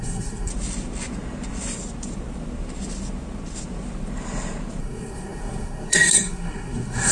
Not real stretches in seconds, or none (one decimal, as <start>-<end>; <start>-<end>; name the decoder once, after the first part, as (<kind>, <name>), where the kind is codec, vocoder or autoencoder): 0.0-0.5 (codec, SNAC); 4.8-7.1